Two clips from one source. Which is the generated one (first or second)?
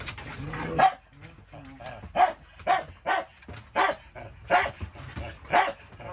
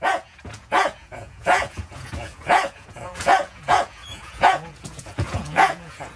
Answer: second